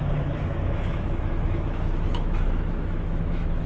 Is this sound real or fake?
fake